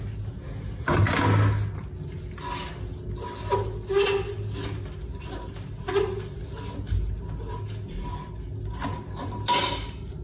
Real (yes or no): yes